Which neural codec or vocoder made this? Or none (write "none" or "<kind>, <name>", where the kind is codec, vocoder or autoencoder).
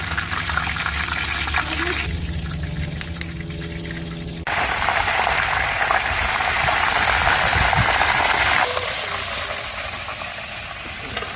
none